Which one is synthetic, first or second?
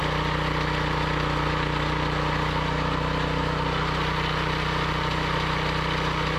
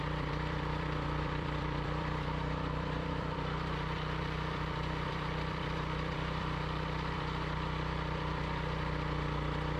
second